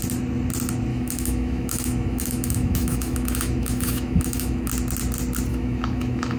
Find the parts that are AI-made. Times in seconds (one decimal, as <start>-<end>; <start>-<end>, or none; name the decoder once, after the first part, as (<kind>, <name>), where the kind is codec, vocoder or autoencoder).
0.9-4.7 (autoencoder, DAC-VAE); 5.5-6.4